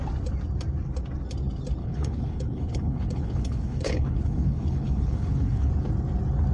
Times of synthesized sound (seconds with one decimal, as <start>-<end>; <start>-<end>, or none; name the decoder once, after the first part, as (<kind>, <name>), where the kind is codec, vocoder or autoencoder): 1.8-5.7 (codec, HILCodec)

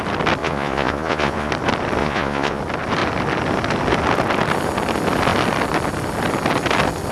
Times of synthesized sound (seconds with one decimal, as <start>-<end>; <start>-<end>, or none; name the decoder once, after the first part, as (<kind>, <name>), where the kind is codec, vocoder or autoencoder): 0.4-1.5 (vocoder, Vocos); 2.0-2.6

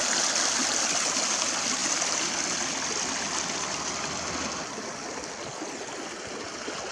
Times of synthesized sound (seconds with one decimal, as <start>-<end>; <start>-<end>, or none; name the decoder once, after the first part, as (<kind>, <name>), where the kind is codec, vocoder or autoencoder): none

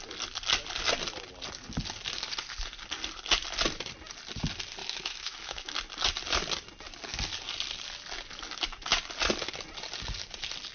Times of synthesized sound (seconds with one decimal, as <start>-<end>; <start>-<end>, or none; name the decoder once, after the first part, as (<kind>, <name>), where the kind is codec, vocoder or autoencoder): 4.8-5.7 (autoencoder, DAC-VAE)